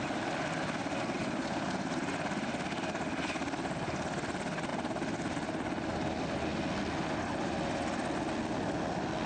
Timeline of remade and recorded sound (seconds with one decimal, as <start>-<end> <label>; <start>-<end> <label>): 0.0-9.3 recorded